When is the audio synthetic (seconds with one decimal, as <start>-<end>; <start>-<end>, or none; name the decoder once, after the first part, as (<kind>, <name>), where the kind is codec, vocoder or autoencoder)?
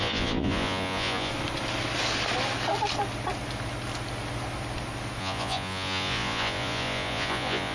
0.0-1.3 (vocoder, Vocos); 5.2-7.7